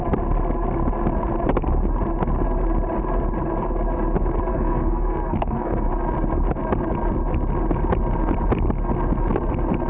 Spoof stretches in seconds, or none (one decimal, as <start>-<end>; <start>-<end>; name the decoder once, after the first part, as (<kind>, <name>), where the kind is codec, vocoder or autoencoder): 4.5-5.9 (codec, SNAC)